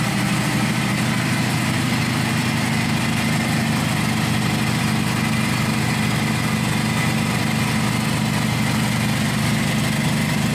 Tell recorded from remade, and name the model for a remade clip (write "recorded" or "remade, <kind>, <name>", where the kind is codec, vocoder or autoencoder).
recorded